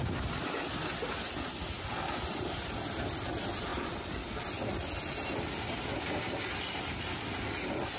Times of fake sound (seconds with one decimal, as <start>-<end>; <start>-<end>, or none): none